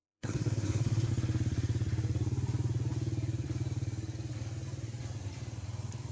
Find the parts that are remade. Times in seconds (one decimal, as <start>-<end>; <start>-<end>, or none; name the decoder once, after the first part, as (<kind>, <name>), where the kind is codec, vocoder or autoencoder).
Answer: 0.0-1.1 (codec, SNAC)

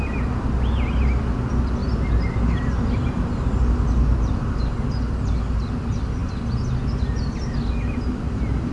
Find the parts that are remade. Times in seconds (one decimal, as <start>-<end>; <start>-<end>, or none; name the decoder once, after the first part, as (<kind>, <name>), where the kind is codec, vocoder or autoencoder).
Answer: none

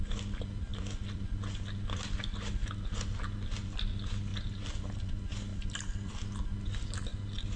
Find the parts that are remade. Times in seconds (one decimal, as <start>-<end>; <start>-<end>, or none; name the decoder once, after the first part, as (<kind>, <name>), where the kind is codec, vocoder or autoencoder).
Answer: none